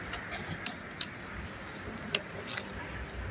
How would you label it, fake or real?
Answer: real